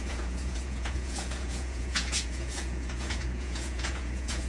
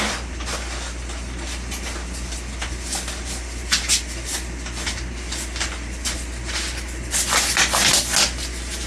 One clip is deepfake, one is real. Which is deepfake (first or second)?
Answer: first